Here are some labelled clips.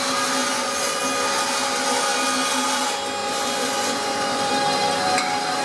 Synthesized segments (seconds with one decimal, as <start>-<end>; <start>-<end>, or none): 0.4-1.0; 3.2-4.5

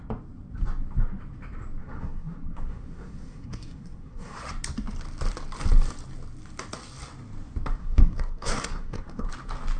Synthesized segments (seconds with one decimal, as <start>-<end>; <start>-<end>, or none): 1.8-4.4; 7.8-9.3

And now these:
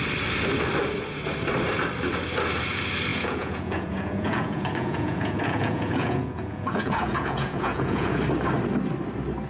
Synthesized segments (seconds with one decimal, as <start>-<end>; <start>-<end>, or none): 3.1-8.2

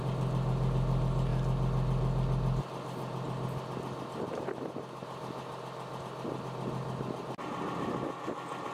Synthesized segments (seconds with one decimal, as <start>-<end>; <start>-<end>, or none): none